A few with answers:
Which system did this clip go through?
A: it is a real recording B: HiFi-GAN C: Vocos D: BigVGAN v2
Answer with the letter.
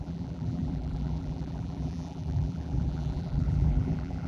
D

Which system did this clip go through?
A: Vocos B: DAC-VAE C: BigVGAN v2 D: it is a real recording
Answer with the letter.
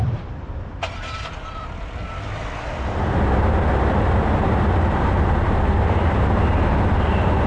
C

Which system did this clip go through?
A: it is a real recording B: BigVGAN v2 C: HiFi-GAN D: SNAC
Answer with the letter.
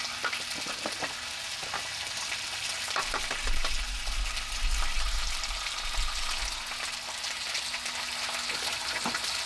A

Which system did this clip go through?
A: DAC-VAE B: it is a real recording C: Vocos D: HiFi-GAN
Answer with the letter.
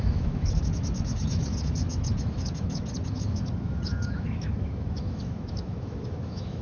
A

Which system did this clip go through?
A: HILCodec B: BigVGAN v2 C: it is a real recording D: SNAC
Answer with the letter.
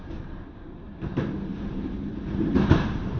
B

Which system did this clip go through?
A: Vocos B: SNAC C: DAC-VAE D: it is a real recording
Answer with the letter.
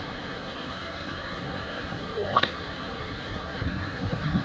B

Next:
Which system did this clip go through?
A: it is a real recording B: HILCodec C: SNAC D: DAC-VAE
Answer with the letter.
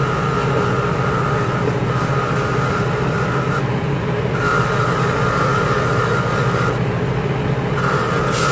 A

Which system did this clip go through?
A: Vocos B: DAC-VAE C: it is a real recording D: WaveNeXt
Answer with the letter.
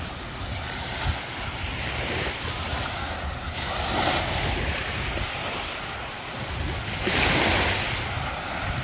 C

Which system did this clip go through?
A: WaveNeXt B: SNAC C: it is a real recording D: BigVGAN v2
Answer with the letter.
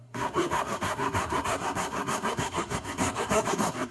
B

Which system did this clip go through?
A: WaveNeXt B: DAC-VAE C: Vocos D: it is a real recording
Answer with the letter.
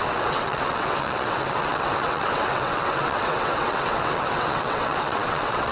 A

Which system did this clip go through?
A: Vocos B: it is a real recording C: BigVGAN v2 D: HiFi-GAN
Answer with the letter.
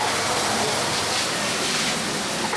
B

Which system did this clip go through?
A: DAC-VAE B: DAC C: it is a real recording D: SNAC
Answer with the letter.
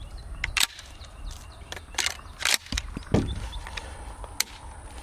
C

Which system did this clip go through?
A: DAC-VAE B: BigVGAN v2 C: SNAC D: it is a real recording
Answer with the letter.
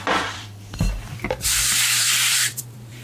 B